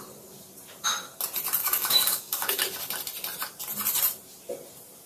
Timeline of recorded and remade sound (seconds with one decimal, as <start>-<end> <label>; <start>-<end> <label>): 0.0-1.6 recorded; 1.6-2.6 remade; 2.6-5.1 recorded